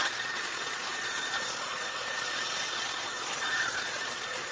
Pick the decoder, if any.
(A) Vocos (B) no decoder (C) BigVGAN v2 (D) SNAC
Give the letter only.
A